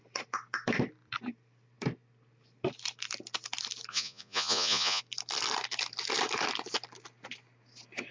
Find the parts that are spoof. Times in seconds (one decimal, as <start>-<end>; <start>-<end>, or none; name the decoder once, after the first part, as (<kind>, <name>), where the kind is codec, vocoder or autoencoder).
3.9-5.0 (vocoder, Vocos)